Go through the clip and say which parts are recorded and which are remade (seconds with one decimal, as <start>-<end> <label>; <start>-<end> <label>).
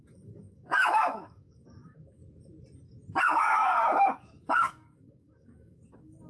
0.0-2.2 remade; 2.2-3.2 recorded; 3.2-6.3 remade